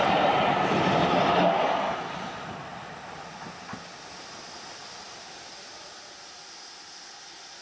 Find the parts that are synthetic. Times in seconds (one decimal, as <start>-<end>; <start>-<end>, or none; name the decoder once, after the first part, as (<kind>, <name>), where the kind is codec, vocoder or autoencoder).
none